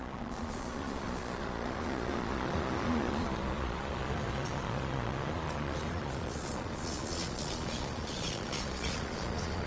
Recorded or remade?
remade